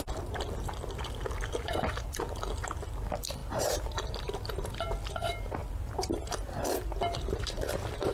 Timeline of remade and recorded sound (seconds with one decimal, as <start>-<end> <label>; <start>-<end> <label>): 0.0-8.1 remade